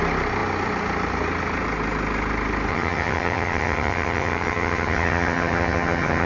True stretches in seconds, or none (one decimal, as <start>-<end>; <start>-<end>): 0.0-2.7